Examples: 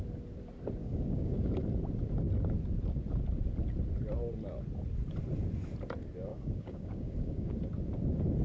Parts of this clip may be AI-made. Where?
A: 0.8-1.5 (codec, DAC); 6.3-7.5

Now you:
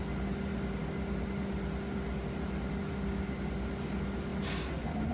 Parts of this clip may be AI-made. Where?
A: none

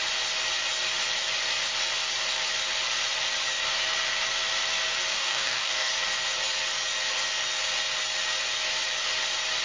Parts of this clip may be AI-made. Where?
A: 5.1-5.9 (codec, DAC)